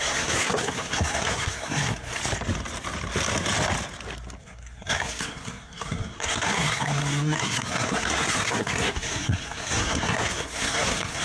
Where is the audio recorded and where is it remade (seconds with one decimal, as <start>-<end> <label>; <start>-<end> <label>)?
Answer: 0.0-2.2 remade; 2.2-4.4 recorded; 4.4-11.2 remade